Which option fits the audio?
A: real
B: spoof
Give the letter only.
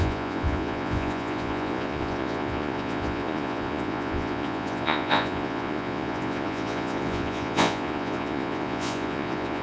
B